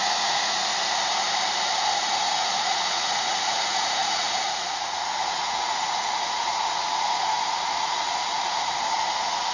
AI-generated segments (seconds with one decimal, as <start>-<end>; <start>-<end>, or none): 0.0-0.7; 1.9-9.5